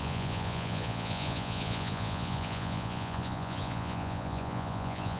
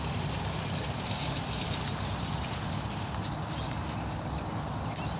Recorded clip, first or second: second